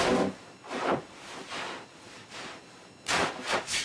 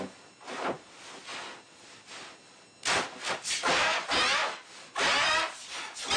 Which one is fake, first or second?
first